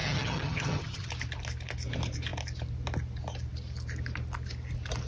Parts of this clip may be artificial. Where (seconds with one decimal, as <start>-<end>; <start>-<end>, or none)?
0.0-1.1